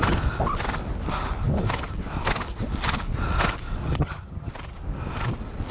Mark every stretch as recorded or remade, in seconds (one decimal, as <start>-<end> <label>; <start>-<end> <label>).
0.0-3.8 recorded; 3.8-4.5 remade; 4.5-5.7 recorded